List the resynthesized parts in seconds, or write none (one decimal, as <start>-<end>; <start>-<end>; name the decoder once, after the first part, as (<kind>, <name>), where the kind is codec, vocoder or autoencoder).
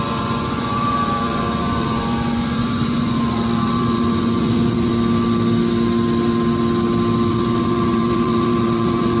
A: 0.0-4.9 (vocoder, Vocos); 7.3-9.2